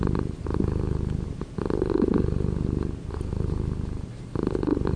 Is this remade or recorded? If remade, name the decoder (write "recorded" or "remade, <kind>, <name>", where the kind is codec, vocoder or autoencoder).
recorded